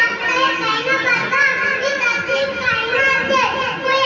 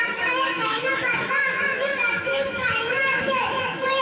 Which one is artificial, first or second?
second